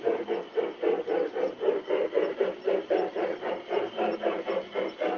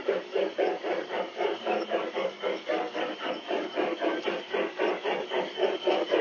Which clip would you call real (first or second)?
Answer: first